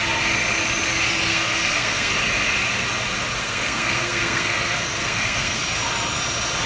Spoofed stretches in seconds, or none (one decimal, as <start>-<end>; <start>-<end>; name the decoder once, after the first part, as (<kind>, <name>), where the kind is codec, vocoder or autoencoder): 1.3-2.1 (codec, SNAC); 3.4-5.6